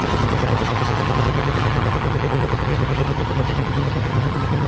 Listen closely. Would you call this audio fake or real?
fake